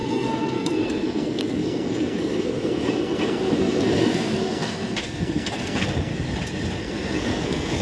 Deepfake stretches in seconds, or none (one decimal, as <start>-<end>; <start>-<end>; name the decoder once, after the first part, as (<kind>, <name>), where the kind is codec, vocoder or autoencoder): 0.0-6.1 (codec, SNAC); 6.8-7.8